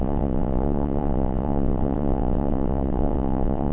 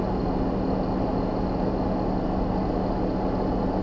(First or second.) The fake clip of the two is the first